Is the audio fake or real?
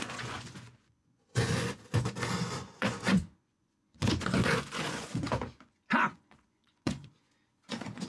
fake